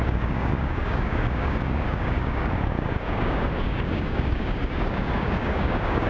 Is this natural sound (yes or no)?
no